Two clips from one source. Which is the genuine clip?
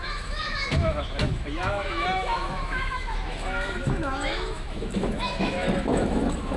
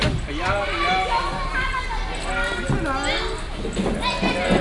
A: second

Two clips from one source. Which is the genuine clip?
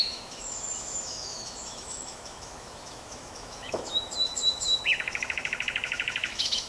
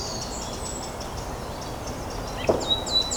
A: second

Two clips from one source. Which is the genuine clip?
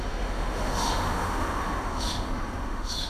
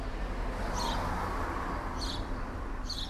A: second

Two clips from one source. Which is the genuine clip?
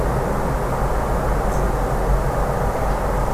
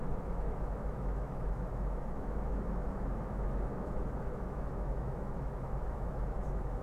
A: first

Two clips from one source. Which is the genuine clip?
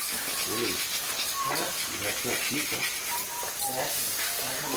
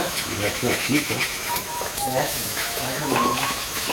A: first